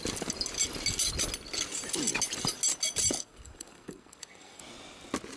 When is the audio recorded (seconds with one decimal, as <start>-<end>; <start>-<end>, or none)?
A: 0.0-3.2; 4.6-5.4